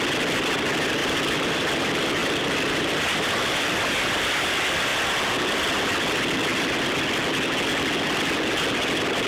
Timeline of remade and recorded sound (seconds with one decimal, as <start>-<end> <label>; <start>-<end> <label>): 0.0-4.9 remade; 4.9-9.3 recorded